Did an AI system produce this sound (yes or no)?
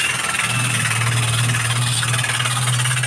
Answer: no